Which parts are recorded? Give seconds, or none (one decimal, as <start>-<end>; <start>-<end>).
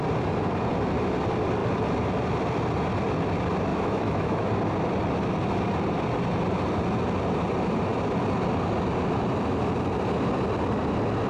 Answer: 0.0-3.7; 4.5-11.3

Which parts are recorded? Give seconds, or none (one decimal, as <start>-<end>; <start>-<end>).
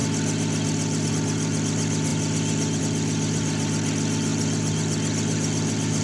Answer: 0.0-6.0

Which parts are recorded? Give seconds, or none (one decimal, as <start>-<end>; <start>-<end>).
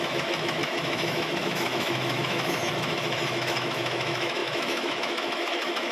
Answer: none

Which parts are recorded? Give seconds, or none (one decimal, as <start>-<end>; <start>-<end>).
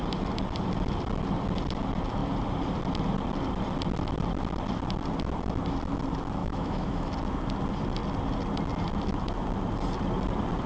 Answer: 0.0-6.4; 7.1-10.7